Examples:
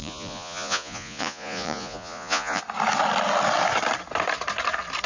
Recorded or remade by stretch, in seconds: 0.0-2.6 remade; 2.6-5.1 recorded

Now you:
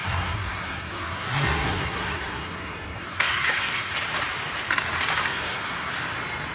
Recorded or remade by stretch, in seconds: 0.0-3.9 remade; 3.9-5.2 recorded; 5.2-5.9 remade; 5.9-6.5 recorded

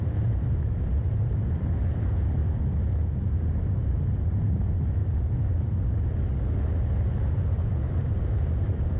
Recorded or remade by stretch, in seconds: 0.0-2.4 remade; 2.4-3.2 recorded; 3.2-5.0 remade; 5.0-7.0 recorded; 7.0-9.0 remade